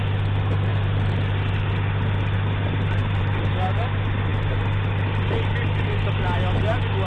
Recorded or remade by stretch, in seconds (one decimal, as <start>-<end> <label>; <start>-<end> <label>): 0.0-7.1 recorded

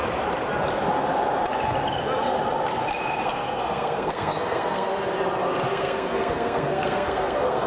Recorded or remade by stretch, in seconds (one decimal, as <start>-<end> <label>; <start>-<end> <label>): 0.0-3.2 recorded; 3.2-4.9 remade; 4.9-5.7 recorded; 5.7-7.7 remade